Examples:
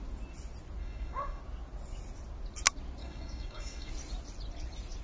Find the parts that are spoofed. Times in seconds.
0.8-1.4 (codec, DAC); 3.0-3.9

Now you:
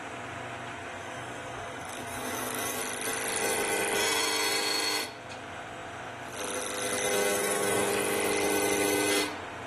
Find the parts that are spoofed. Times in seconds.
1.0-2.8 (codec, DAC); 7.3-7.9

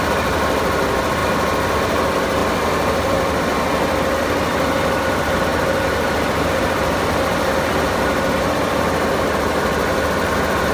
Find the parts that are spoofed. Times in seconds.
none

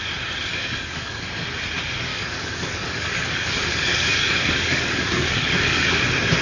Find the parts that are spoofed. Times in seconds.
0.5-1.4 (codec, DAC); 2.1-5.9